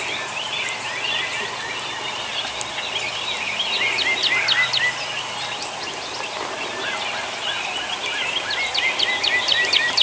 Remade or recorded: recorded